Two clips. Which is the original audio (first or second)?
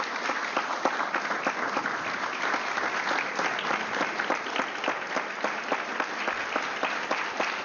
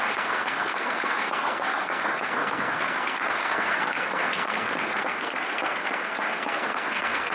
first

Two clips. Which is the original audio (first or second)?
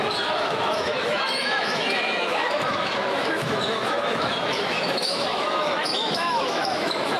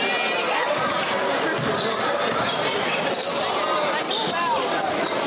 second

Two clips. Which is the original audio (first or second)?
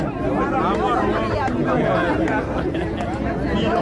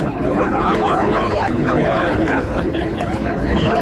first